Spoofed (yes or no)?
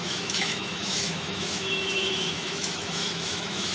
yes